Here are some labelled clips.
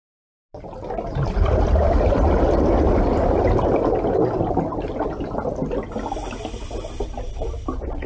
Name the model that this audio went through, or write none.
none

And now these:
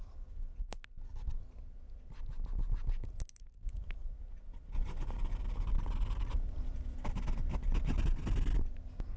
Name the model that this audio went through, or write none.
none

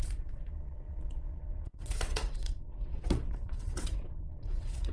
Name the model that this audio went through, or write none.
vocoder, WaveNeXt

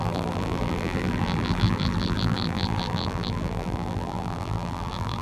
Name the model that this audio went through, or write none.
vocoder, BigVGAN v2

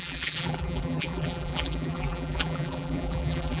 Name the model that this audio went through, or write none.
vocoder, BigVGAN v2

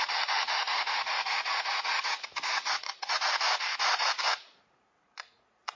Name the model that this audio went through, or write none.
vocoder, Vocos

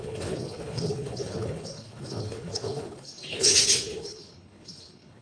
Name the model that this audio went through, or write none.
codec, HILCodec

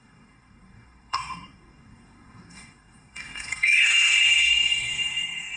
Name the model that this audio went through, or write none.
codec, SNAC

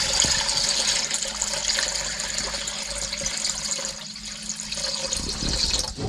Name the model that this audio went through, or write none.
none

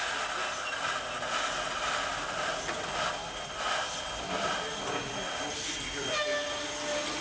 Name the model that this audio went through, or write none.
none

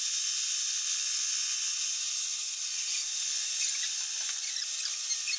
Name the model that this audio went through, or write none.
none